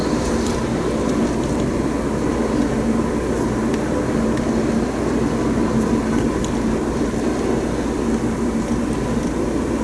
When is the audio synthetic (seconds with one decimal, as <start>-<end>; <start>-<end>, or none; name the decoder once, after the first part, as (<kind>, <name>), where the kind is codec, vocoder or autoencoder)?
none